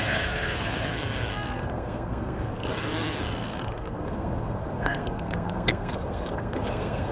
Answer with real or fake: fake